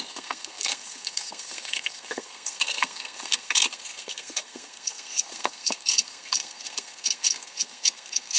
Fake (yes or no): yes